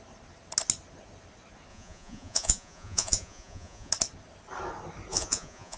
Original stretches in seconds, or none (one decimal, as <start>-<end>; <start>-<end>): 0.0-1.7; 3.9-5.1